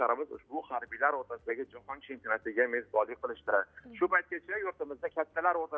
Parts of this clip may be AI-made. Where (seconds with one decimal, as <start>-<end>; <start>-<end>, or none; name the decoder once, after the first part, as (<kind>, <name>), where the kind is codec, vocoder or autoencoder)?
none